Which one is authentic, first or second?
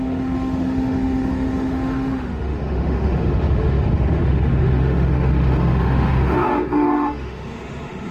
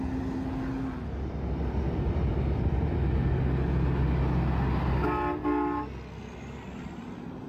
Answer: second